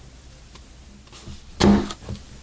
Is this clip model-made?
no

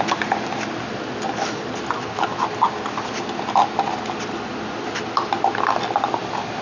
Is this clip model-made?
no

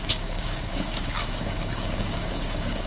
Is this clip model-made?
yes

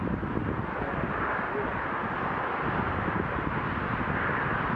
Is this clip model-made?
no